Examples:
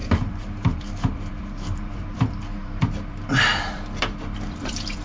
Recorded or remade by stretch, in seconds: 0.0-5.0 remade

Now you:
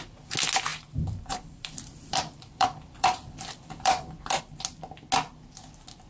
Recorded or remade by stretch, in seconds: 0.0-0.7 recorded; 0.7-4.4 remade; 4.4-6.1 recorded

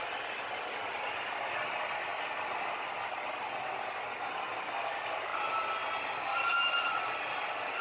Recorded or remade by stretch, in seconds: 0.0-6.5 recorded; 6.5-7.8 remade

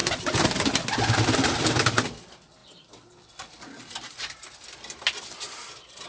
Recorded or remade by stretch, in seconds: 0.0-6.1 remade

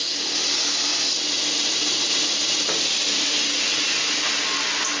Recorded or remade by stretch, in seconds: 0.0-0.9 recorded; 0.9-3.4 remade; 3.4-5.0 recorded

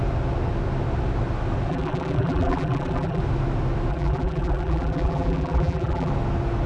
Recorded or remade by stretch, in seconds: 0.0-1.7 recorded; 1.7-3.2 remade; 3.2-3.9 recorded; 3.9-6.1 remade; 6.1-6.7 recorded

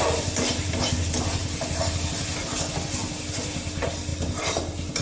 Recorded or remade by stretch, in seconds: 0.0-1.4 recorded; 1.4-2.1 remade; 2.1-4.1 recorded; 4.1-5.0 remade